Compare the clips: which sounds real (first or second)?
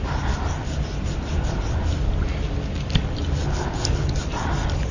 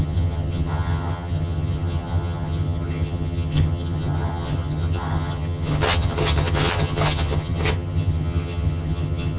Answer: first